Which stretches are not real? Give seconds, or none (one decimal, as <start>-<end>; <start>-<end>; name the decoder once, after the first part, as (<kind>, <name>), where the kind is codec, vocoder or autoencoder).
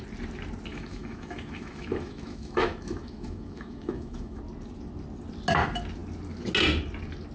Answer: 0.7-4.4 (autoencoder, DAC-VAE)